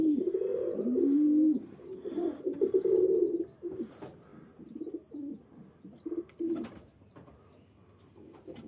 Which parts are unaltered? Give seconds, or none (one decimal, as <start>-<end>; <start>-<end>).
0.0-8.7